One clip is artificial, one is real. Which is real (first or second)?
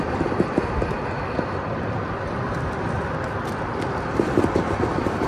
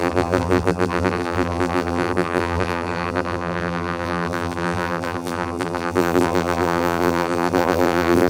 first